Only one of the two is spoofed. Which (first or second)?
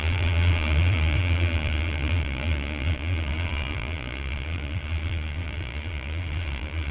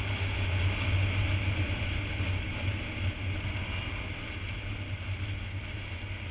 first